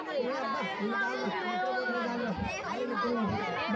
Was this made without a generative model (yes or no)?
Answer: yes